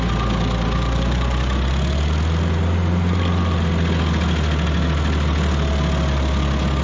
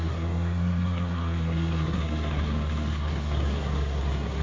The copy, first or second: second